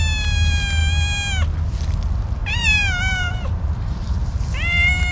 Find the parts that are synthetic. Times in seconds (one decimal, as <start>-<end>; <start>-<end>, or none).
2.4-5.1